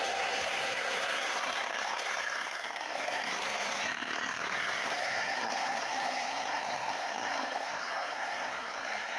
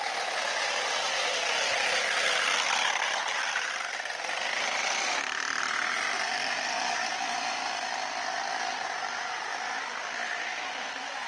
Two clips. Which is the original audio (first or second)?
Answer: second